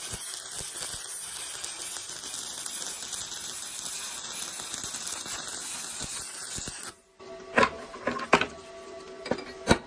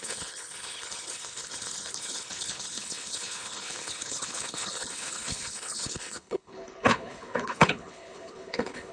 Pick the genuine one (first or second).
first